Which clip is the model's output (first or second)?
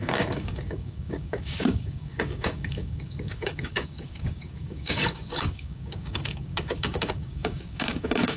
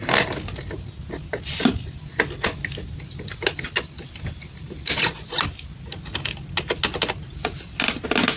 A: first